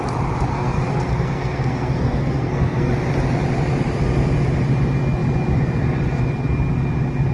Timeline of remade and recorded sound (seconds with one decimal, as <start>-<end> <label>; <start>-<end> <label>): 0.0-0.5 recorded; 0.5-2.9 remade; 2.9-7.3 recorded